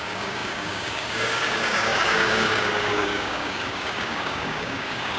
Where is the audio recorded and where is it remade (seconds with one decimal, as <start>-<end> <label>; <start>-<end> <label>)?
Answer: 0.0-5.2 remade